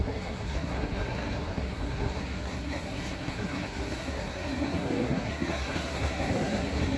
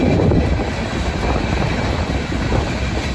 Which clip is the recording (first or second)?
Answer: second